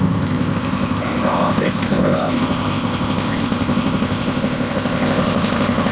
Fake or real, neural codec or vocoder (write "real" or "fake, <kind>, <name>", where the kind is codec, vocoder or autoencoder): fake, codec, ZipCodec